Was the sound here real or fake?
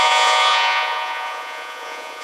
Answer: fake